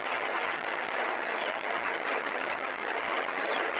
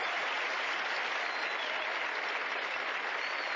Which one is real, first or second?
second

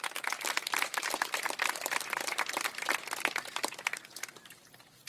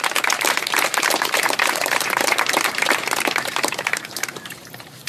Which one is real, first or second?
first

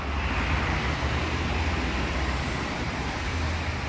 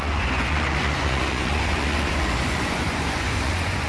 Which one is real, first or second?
first